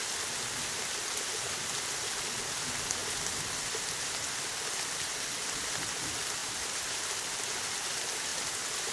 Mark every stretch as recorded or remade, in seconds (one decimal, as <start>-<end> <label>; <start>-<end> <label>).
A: 0.0-6.4 recorded; 6.4-7.4 remade; 7.4-8.9 recorded